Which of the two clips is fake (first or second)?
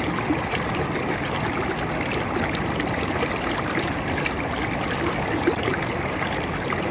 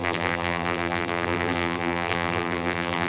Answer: second